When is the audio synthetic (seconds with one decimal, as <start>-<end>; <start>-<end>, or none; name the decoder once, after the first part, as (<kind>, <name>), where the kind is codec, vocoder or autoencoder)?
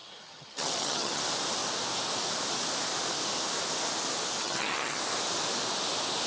0.0-1.2 (vocoder, HiFi-GAN); 4.4-5.0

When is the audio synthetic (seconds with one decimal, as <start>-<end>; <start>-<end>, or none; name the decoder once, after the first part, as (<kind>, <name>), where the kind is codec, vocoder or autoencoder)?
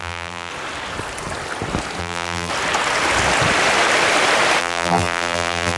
0.0-0.5 (vocoder, BigVGAN v2); 2.0-2.5; 4.6-5.8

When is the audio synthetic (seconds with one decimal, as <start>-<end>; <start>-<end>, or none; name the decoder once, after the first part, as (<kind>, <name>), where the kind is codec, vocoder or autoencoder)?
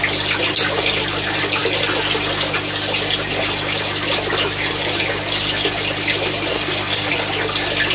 6.5-7.1 (codec, SNAC)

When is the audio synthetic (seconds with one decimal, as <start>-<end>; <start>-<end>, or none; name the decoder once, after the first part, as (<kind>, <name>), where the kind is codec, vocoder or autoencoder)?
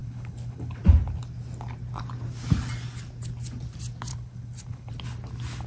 0.0-0.8 (codec, HILCodec); 4.1-4.9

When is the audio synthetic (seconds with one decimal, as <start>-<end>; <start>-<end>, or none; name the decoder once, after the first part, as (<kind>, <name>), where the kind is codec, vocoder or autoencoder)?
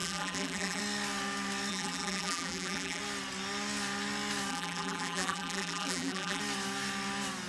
0.0-0.8 (vocoder, BigVGAN v2); 1.7-3.0; 4.5-6.4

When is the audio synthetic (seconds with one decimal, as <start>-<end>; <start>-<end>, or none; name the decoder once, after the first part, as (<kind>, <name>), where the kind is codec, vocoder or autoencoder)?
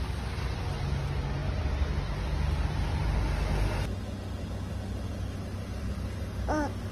none